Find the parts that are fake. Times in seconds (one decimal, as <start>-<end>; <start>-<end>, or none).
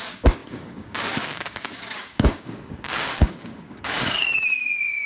0.0-5.1